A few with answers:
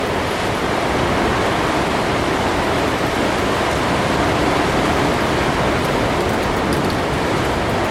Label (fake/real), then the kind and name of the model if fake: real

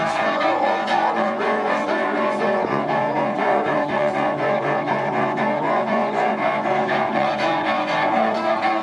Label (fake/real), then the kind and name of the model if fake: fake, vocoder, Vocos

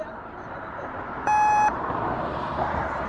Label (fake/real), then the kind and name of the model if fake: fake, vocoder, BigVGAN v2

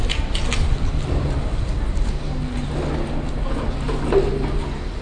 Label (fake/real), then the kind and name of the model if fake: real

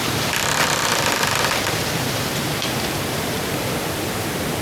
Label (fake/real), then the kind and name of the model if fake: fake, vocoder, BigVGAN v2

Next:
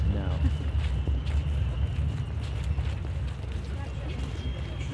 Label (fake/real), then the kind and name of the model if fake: real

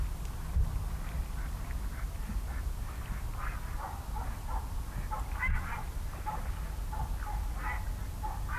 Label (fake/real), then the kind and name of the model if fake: real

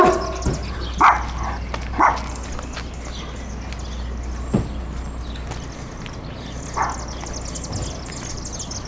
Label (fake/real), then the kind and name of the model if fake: real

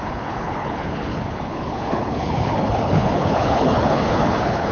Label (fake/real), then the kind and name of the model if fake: fake, codec, HILCodec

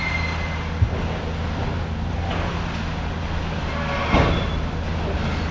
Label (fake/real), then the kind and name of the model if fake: real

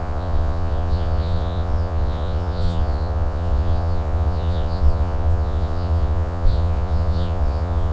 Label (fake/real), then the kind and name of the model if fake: fake, vocoder, Vocos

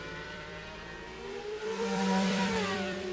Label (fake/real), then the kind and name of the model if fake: fake, vocoder, BigVGAN v2